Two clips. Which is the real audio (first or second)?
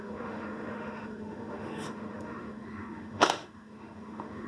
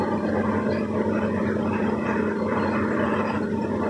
second